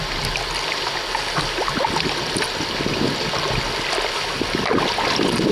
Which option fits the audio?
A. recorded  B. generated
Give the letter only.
A